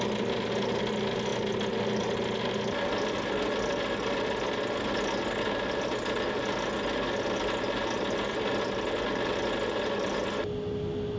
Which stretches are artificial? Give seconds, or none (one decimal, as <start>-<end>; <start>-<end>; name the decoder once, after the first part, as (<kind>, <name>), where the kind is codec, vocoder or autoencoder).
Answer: none